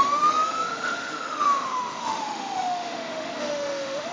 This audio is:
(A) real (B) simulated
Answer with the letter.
B